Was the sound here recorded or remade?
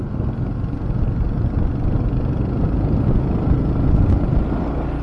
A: recorded